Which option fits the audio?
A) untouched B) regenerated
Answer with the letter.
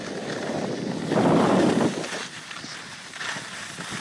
A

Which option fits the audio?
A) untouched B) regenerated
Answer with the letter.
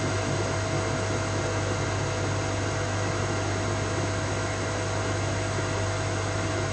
A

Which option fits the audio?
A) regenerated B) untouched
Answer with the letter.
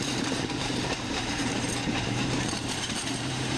A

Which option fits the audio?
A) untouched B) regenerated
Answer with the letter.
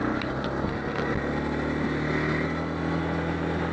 A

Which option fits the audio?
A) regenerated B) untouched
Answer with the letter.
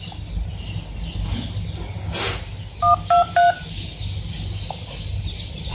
B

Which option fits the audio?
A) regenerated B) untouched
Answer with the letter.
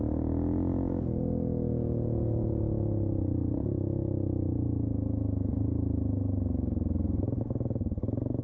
B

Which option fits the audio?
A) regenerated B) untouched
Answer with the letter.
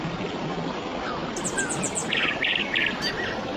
B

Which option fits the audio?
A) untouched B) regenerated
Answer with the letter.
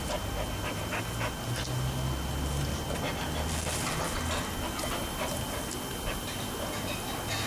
A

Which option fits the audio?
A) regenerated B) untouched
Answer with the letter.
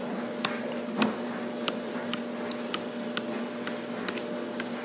B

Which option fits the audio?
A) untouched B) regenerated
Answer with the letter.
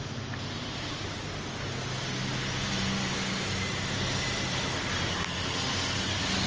A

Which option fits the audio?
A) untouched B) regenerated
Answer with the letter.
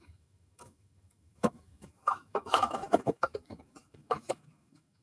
B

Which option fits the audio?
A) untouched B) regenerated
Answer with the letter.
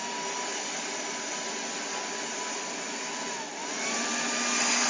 A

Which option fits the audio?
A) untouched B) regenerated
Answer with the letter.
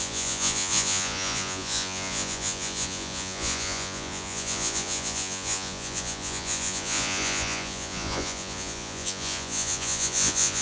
B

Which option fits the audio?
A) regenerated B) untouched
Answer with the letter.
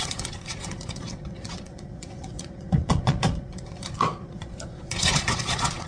A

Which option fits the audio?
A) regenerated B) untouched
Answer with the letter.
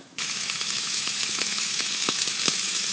A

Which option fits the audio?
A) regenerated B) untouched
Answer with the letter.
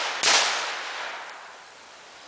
B